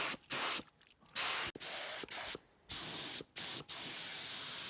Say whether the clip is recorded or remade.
recorded